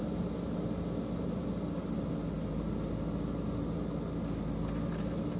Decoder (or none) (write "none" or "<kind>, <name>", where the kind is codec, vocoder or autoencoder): none